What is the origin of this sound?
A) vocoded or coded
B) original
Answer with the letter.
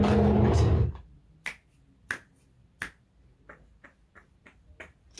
B